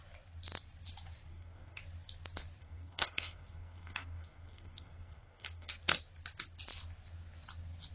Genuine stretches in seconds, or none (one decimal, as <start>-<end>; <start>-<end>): 0.0-1.3; 1.8-2.6; 5.7-7.9